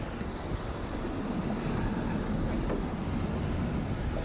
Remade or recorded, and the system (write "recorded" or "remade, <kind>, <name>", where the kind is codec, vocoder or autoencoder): recorded